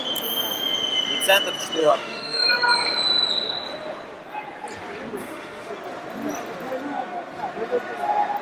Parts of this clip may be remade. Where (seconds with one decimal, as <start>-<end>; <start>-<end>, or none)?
1.8-2.5; 5.2-5.7